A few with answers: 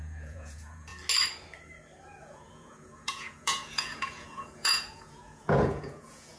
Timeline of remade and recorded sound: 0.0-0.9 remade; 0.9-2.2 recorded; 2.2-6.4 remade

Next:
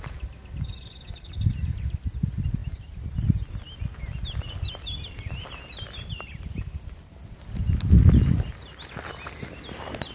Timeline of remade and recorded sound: 0.0-10.1 recorded

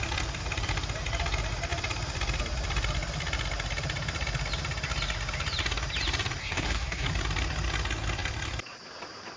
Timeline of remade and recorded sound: 0.0-6.4 recorded; 6.4-7.1 remade; 7.1-9.4 recorded

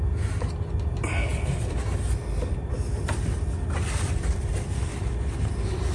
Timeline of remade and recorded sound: 0.0-1.3 recorded; 1.3-4.5 remade; 4.5-4.9 recorded; 4.9-5.5 remade; 5.5-5.9 recorded

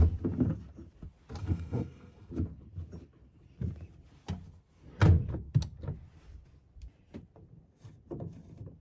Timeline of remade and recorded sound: 0.0-1.4 recorded; 1.4-2.3 remade; 2.3-8.8 recorded

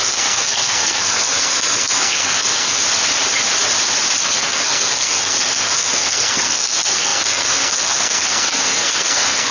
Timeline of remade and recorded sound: 0.0-2.8 remade; 2.8-4.2 recorded; 4.2-9.5 remade